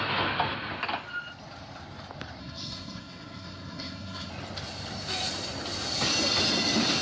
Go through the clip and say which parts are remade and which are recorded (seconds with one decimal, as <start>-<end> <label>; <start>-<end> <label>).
0.0-2.4 recorded; 2.4-4.3 remade; 4.3-7.0 recorded